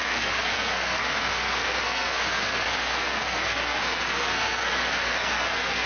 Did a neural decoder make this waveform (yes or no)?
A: yes